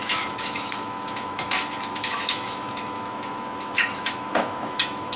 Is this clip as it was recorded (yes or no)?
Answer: no